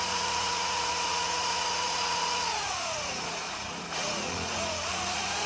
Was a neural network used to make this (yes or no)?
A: yes